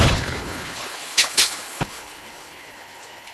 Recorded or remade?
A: remade